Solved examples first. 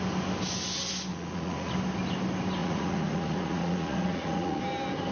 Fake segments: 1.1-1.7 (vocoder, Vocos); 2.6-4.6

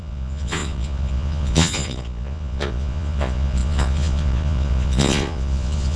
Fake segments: 0.0-6.0 (vocoder, Vocos)

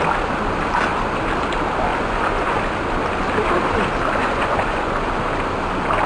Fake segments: 1.9-2.6 (vocoder, Vocos); 4.2-5.1

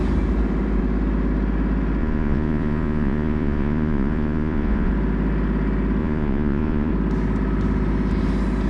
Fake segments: 2.0-4.9 (vocoder, Vocos); 6.0-6.9

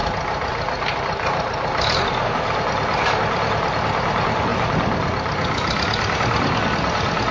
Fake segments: none

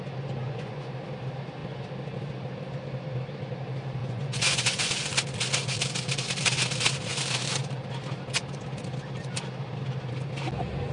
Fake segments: 0.4-0.9 (vocoder, Vocos); 4.0-4.9

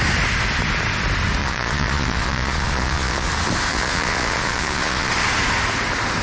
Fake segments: 1.4-3.3 (vocoder, Vocos); 3.7-5.1